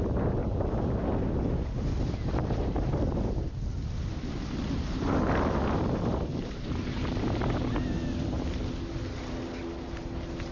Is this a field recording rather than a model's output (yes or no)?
yes